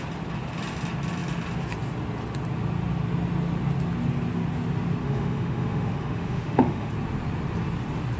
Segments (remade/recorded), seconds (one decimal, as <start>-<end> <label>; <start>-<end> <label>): 0.0-5.0 recorded; 5.0-6.9 remade; 6.9-8.2 recorded